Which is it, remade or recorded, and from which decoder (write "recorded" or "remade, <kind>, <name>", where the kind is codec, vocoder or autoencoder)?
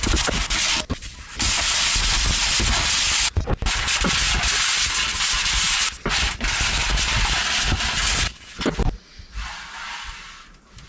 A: recorded